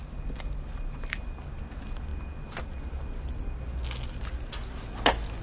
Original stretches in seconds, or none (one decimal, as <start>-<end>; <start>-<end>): 0.0-5.4